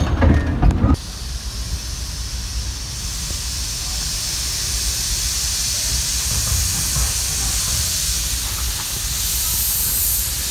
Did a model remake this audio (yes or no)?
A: no